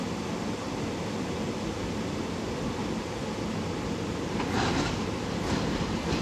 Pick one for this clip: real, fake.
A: real